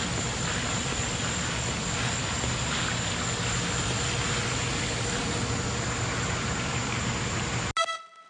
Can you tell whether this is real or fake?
real